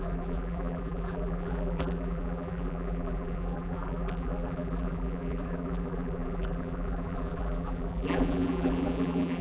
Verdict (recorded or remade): remade